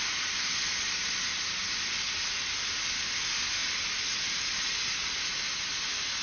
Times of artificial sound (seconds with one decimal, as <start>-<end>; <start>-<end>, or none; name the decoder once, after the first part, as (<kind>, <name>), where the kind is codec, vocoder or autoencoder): none